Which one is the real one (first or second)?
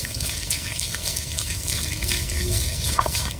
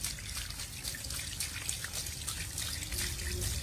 second